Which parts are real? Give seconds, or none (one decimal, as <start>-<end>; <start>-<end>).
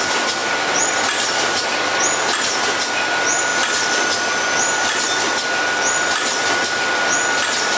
0.0-0.4; 1.8-3.5